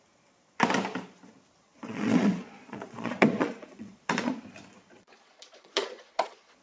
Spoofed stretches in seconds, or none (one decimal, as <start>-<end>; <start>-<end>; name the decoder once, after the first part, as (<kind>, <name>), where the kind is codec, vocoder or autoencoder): 1.6-4.4 (vocoder, Vocos); 4.9-6.6